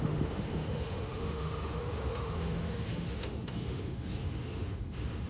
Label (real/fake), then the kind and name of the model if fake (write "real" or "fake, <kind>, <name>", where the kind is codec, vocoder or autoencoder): fake, autoencoder, DAC-VAE